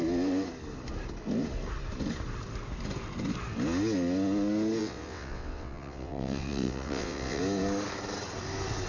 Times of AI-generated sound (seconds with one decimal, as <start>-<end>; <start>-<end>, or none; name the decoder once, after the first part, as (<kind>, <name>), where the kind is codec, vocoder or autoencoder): 4.8-7.4 (vocoder, WaveNeXt)